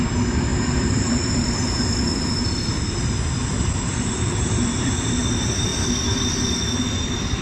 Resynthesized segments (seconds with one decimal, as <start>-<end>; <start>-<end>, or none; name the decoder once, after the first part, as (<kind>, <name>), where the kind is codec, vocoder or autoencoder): 0.5-4.9 (vocoder, BigVGAN v2)